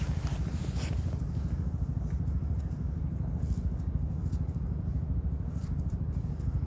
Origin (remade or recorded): recorded